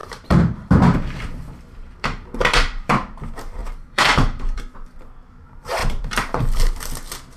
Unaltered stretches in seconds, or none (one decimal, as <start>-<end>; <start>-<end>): 3.2-3.6; 4.6-5.8; 6.4-7.4